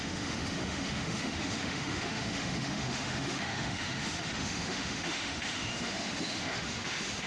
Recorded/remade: remade